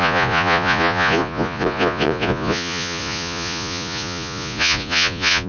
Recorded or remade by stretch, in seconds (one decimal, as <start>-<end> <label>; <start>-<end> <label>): 0.0-5.5 remade